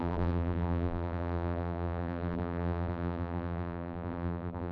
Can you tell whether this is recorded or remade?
remade